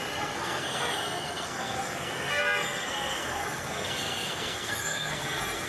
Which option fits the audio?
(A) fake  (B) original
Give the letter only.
A